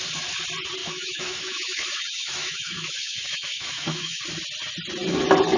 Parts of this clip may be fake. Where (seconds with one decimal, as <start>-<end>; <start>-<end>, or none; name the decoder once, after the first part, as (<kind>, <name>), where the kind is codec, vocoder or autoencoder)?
0.8-4.2 (autoencoder, DAC-VAE)